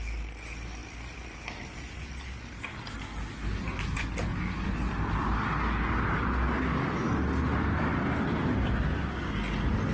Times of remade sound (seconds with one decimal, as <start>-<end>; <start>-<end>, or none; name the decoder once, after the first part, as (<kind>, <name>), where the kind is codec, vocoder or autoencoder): none